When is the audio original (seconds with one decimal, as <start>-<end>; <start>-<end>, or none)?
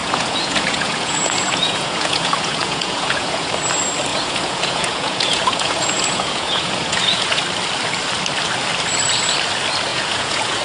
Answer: 3.5-4.1; 7.4-9.9